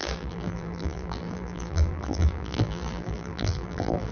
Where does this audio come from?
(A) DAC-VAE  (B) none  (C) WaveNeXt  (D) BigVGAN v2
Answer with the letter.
D